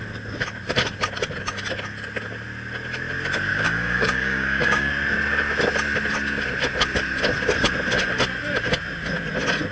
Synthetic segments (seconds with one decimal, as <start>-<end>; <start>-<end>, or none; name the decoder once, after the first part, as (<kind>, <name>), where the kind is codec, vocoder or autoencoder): 3.5-4.9 (codec, DAC)